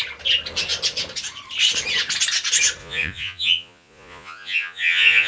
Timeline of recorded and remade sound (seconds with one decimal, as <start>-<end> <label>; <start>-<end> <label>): 0.0-2.8 recorded; 2.8-5.3 remade